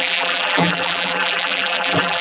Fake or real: fake